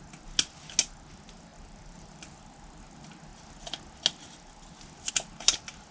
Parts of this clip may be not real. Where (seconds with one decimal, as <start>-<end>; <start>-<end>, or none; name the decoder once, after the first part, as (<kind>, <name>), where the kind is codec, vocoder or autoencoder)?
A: 1.5-2.4 (vocoder, BigVGAN v2)